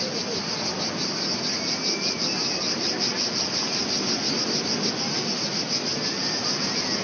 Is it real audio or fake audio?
real